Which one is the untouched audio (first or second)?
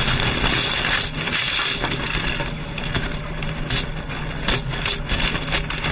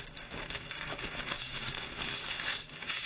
first